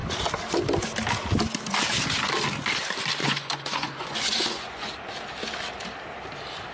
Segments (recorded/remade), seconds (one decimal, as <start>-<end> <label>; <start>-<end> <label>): 0.0-3.2 recorded; 3.2-4.9 remade; 4.9-6.7 recorded